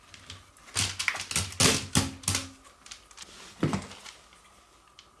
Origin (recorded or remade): recorded